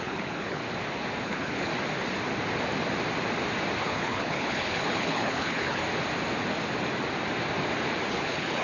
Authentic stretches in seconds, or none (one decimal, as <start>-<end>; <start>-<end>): 0.6-1.2; 1.7-3.8; 5.8-8.1